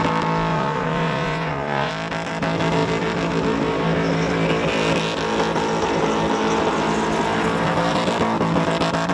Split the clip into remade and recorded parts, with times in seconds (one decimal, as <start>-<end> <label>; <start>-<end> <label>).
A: 0.0-0.5 recorded; 0.5-1.9 remade; 1.9-9.1 recorded